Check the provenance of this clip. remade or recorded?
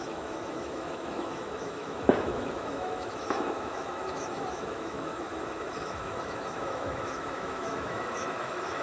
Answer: remade